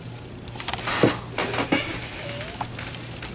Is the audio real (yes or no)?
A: yes